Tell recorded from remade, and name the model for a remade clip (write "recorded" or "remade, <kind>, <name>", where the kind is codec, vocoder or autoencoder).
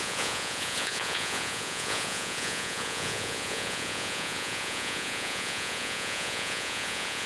remade, vocoder, Vocos